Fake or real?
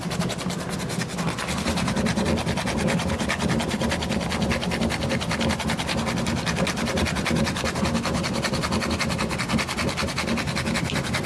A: real